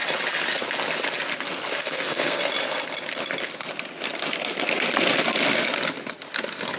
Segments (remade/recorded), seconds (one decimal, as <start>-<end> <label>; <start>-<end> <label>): 0.0-1.8 recorded; 1.8-2.4 remade; 2.4-6.8 recorded